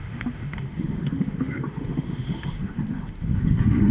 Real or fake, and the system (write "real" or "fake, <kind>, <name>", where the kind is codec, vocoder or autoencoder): fake, autoencoder, DAC-VAE